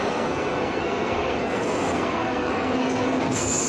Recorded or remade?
remade